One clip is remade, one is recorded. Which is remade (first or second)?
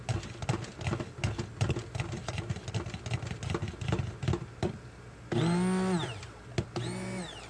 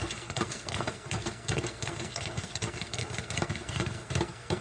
second